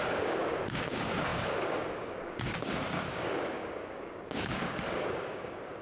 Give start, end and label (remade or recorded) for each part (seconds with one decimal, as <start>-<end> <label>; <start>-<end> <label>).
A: 0.0-5.8 remade